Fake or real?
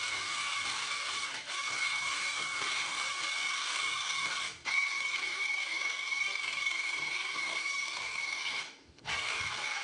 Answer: fake